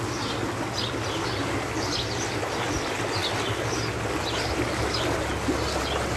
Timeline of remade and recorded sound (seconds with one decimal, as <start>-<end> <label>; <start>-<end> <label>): 0.0-6.2 recorded